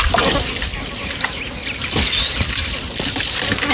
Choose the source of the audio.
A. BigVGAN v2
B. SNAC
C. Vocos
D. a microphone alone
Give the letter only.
D